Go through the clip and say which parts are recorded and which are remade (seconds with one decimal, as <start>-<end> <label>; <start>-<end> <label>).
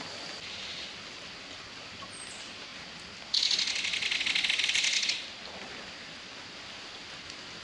0.0-7.6 recorded